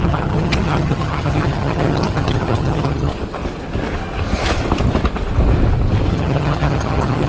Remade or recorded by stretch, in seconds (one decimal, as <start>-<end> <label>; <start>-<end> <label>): 0.0-3.1 remade; 3.1-6.1 recorded; 6.1-7.3 remade